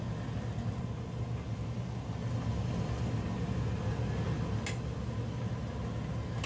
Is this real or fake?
real